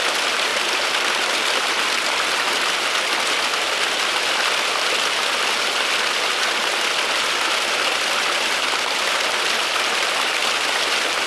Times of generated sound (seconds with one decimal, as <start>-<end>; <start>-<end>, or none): none